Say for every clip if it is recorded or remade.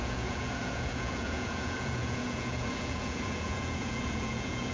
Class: remade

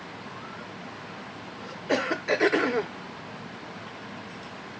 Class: recorded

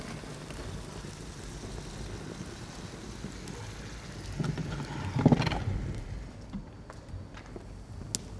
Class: recorded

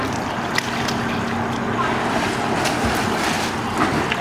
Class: recorded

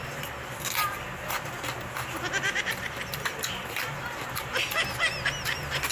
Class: recorded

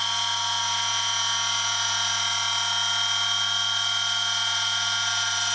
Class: recorded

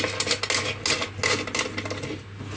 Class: recorded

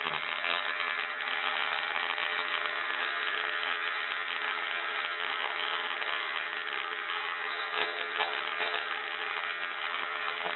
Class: remade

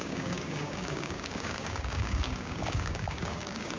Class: remade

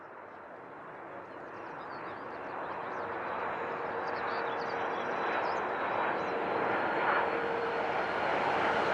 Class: recorded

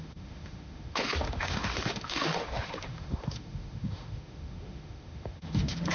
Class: remade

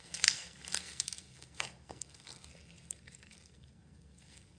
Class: remade